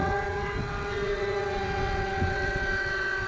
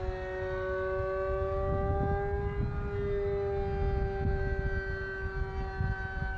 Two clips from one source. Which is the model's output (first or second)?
first